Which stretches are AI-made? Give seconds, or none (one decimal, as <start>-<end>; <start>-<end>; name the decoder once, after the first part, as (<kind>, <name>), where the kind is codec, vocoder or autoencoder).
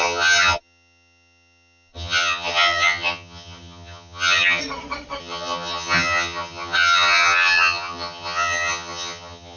0.0-4.6 (vocoder, HiFi-GAN); 5.2-9.6